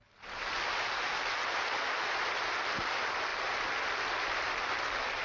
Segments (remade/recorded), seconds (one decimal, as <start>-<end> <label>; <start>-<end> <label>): 0.0-5.2 recorded